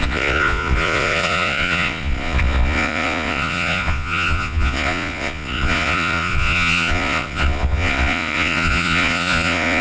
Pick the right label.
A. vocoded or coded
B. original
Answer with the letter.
A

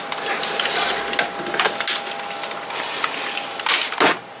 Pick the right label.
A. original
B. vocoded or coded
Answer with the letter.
A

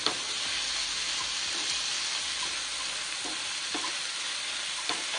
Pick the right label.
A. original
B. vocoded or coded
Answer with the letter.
A